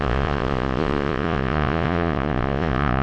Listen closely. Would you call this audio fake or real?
fake